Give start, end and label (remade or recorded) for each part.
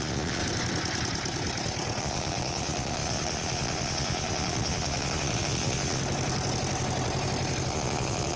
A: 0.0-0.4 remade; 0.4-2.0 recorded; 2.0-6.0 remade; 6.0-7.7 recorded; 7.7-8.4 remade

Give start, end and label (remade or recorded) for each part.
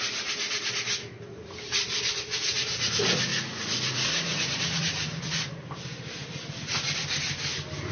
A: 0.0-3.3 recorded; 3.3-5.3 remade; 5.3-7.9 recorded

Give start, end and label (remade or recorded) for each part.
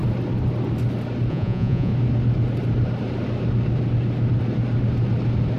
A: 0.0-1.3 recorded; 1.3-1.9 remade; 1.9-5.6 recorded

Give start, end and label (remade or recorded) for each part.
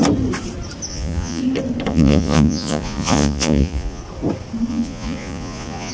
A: 0.0-0.9 recorded; 0.9-1.4 remade; 1.4-1.9 recorded; 1.9-4.0 remade; 4.0-4.7 recorded; 4.7-5.9 remade